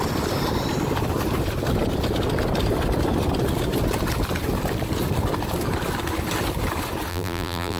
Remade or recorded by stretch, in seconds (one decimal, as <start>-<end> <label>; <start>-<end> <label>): 0.0-7.1 recorded; 7.1-7.8 remade